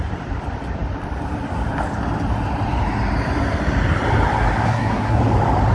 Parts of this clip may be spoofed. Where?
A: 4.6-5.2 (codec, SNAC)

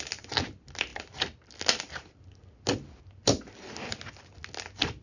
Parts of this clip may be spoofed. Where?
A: none

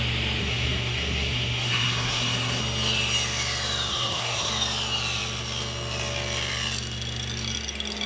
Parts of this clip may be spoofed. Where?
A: 0.4-2.6 (codec, SNAC); 3.9-4.5

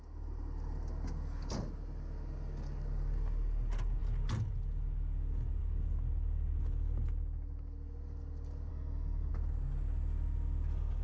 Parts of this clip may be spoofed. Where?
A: 8.7-9.3 (codec, SNAC)

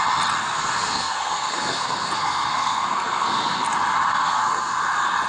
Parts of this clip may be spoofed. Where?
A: 0.4-3.6 (codec, SNAC); 4.1-4.7